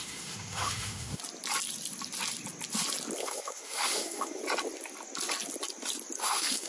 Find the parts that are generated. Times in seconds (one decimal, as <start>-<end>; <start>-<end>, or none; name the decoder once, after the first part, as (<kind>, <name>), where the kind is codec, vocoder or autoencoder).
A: 0.0-1.2 (autoencoder, DAC-VAE); 3.2-4.4; 6.2-6.7